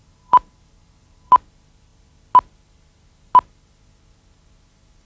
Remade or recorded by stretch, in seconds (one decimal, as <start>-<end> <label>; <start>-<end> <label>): 0.0-1.3 remade; 1.3-5.1 recorded